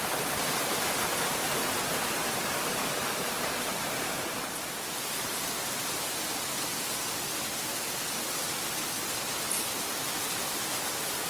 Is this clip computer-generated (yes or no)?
no